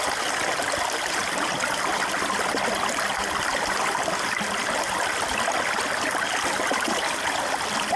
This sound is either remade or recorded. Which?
recorded